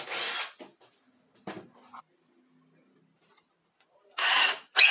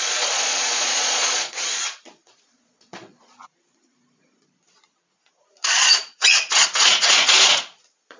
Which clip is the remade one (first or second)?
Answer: second